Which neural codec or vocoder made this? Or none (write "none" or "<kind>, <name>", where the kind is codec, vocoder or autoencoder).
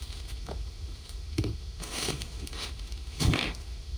autoencoder, DAC-VAE